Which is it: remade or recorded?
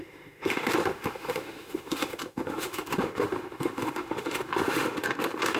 remade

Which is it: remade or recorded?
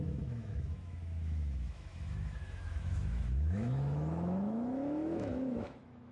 remade